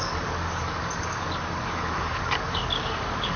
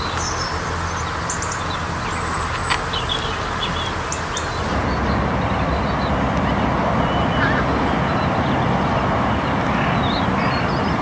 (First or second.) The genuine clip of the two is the second